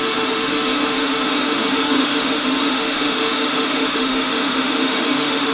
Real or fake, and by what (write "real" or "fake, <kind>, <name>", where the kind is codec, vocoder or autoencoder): fake, autoencoder, DAC-VAE